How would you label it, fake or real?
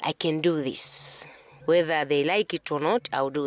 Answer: real